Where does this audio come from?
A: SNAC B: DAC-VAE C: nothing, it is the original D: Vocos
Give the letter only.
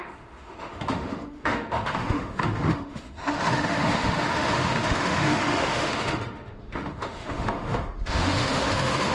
B